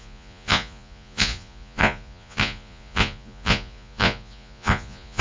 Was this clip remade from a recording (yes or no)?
yes